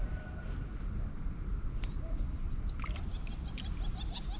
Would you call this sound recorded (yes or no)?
yes